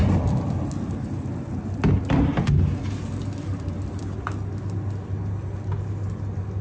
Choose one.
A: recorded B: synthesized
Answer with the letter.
A